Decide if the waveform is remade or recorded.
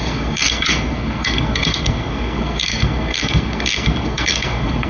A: remade